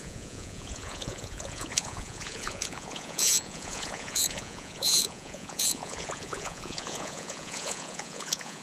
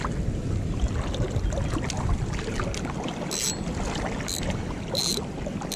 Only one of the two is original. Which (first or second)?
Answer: second